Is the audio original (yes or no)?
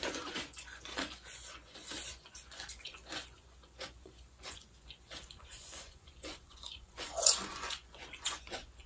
no